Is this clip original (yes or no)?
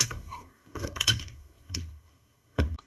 no